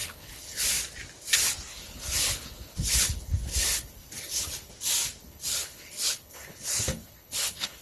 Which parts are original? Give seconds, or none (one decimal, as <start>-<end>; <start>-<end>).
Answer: 0.6-1.7; 4.7-5.2